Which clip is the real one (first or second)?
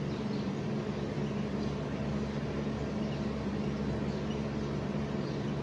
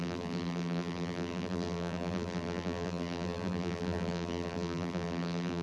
first